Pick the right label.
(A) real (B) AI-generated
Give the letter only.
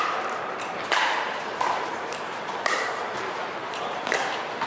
B